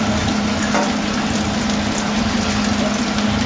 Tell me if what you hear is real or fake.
real